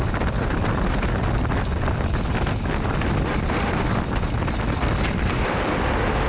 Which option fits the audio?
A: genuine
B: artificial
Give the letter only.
A